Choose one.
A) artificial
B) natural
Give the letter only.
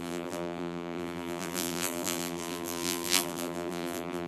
A